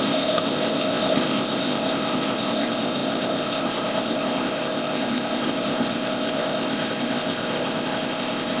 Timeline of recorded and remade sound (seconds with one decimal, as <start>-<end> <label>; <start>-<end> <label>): 0.0-8.6 remade